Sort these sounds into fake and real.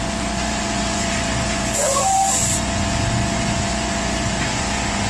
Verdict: fake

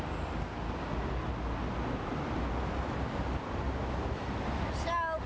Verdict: real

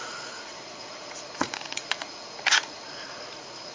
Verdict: fake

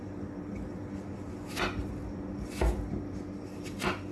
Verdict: real